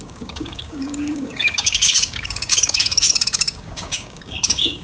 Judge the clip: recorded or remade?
remade